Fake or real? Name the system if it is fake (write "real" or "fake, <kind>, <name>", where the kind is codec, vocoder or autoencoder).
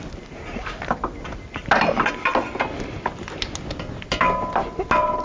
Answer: real